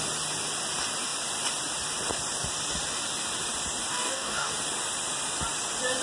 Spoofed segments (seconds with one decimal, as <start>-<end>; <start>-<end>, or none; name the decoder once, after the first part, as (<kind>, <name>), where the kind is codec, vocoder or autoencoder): 3.9-4.5 (codec, DAC)